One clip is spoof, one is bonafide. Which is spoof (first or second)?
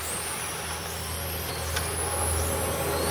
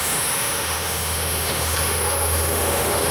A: second